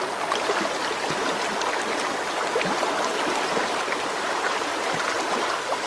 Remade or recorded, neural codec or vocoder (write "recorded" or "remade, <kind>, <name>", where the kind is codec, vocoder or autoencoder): recorded